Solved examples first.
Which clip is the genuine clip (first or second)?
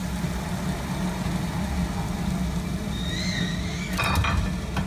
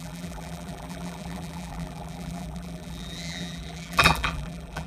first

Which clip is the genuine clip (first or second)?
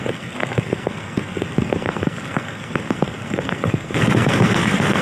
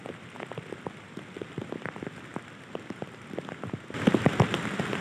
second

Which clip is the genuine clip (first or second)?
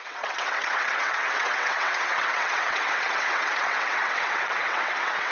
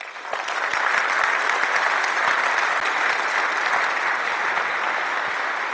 second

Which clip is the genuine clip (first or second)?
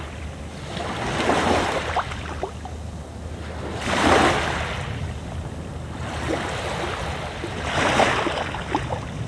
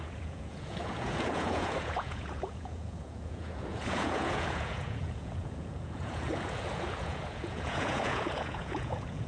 first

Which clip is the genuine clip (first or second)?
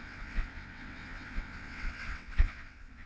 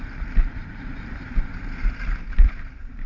second